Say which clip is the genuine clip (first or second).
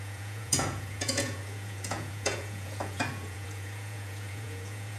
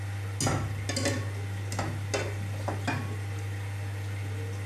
second